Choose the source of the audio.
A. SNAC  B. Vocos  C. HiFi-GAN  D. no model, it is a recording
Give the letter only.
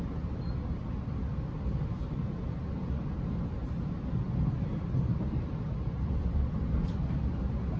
D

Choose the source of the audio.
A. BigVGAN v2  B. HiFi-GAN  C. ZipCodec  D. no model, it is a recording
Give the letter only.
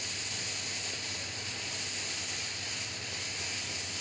D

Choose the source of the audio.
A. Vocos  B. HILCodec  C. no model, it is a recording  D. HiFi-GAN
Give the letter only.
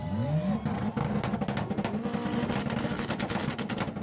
C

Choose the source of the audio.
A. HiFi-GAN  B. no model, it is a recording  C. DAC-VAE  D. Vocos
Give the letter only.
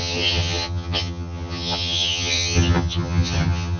A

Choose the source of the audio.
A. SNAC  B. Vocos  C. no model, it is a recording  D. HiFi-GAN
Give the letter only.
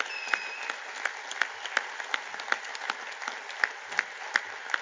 C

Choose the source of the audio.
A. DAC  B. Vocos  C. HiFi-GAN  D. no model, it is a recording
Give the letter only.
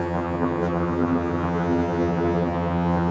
C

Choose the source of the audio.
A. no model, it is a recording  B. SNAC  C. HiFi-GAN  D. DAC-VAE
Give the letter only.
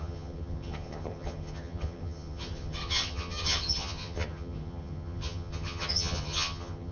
C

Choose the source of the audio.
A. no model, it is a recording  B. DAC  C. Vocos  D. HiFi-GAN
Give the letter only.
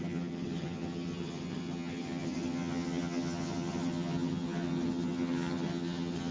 D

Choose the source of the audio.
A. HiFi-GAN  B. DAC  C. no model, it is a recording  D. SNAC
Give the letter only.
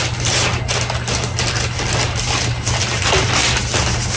C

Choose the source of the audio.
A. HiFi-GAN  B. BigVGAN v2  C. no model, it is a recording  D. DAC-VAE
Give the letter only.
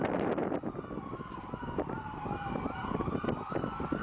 C